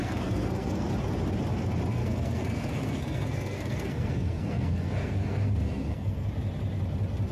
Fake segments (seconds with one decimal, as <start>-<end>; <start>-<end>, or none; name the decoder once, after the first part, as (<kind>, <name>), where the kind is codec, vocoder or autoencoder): 0.0-0.9 (codec, SNAC); 1.9-6.3